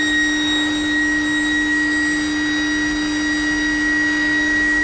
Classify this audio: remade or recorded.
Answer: recorded